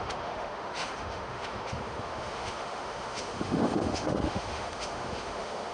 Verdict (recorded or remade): remade